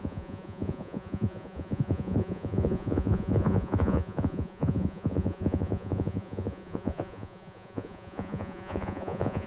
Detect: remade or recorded remade